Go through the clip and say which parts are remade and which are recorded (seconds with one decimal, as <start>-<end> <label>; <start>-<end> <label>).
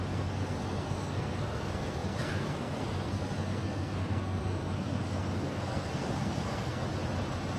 0.0-6.8 remade; 6.8-7.6 recorded